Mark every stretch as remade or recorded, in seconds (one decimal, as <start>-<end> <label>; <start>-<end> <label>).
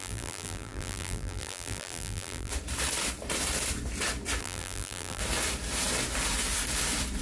0.0-2.5 remade; 2.5-4.4 recorded; 4.4-5.2 remade; 5.2-7.2 recorded